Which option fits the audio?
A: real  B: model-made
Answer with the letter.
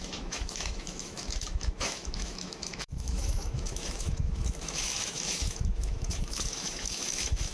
B